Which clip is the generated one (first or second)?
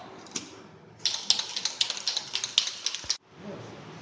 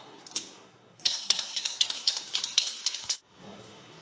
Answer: second